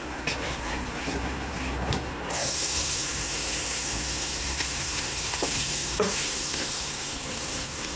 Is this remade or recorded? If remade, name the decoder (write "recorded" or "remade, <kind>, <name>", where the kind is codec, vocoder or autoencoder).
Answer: remade, codec, SNAC